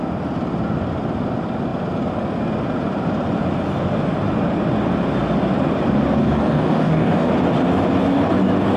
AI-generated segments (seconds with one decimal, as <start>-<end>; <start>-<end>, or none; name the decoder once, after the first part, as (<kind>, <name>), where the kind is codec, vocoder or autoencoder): 6.2-7.3 (codec, DAC)